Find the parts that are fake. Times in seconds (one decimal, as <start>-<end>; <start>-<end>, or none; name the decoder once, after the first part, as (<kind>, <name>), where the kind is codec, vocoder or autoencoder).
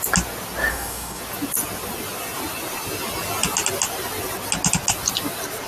0.7-1.2 (codec, DAC)